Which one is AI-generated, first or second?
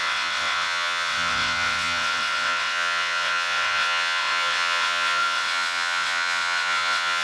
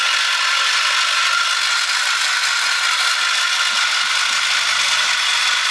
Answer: first